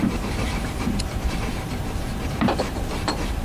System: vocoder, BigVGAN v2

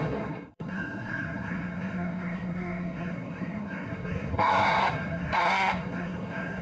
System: codec, SNAC